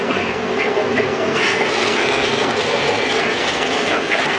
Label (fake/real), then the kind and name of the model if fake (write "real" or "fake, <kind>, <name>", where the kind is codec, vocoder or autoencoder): fake, codec, SNAC